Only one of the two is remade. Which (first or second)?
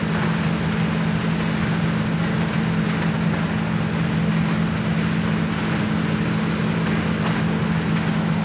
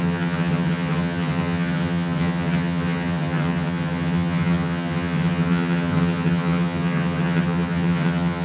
second